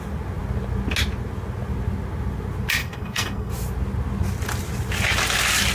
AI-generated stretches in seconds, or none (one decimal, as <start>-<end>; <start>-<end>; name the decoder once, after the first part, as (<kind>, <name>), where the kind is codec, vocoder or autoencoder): 2.8-3.5 (codec, SNAC)